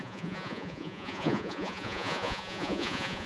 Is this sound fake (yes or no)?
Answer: yes